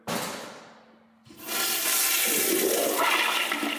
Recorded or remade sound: recorded